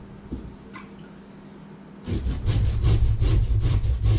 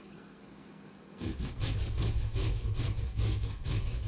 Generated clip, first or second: second